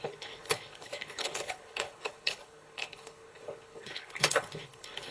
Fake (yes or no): yes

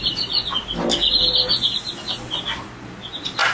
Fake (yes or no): no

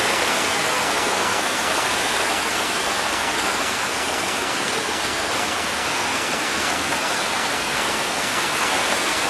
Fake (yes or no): yes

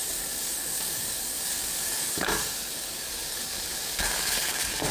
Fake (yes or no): yes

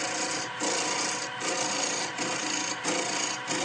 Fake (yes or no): no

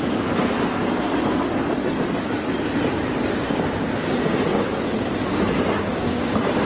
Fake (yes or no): no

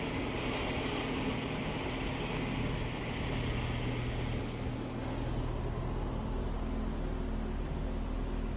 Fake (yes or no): no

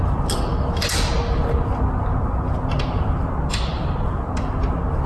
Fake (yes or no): no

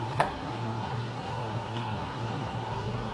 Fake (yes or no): yes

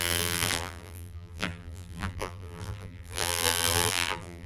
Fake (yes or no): yes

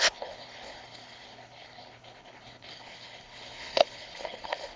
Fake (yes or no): yes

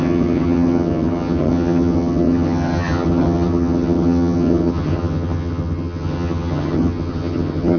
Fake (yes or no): yes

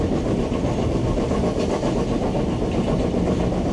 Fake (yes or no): no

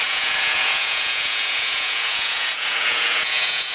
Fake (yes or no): yes